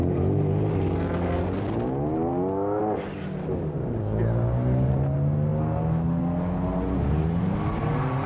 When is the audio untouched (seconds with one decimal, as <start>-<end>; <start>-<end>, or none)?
0.0-8.3